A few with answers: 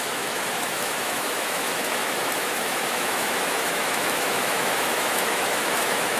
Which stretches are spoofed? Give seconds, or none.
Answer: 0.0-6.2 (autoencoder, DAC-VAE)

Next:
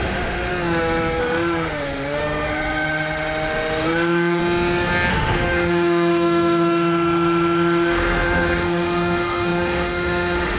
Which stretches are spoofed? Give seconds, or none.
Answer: 0.0-0.5 (autoencoder, DAC-VAE); 1.2-4.4; 5.1-10.6

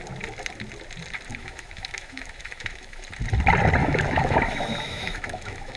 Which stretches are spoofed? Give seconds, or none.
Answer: 1.3-3.0 (autoencoder, DAC-VAE); 3.8-5.8

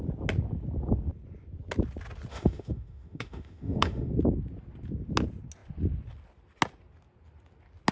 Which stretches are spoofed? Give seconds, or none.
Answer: 2.3-4.1 (autoencoder, DAC-VAE)

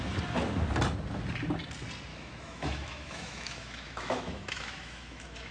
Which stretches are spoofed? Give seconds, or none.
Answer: 2.1-5.5 (autoencoder, DAC-VAE)